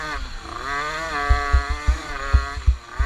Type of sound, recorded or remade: recorded